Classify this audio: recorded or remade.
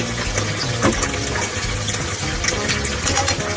recorded